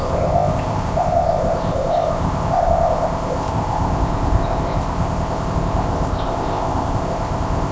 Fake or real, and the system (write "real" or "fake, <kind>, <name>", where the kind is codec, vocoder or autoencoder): fake, codec, ZipCodec